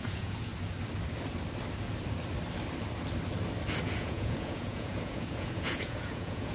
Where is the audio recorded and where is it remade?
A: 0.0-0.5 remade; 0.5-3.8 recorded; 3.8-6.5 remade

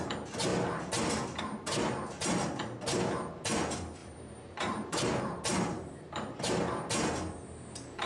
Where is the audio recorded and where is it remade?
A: 0.0-4.0 recorded; 4.0-6.9 remade; 6.9-8.1 recorded

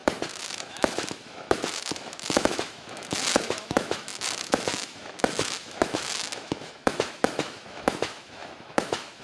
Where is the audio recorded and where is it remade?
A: 0.0-0.5 recorded; 0.5-9.2 remade

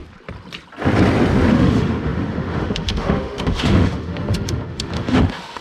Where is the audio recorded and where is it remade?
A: 0.0-1.5 recorded; 1.5-5.6 remade

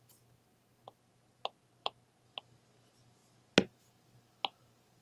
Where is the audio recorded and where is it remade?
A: 0.0-5.0 recorded

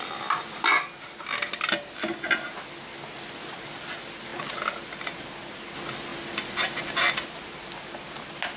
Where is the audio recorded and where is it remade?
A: 0.0-6.1 recorded; 6.1-6.8 remade; 6.8-8.6 recorded